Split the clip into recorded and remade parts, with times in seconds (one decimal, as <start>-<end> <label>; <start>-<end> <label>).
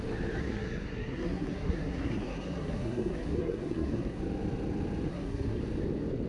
0.0-0.4 recorded; 0.4-4.2 remade; 4.2-5.1 recorded; 5.1-5.6 remade; 5.6-6.3 recorded